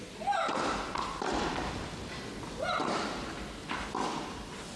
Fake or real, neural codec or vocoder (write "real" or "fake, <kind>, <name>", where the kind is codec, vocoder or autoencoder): real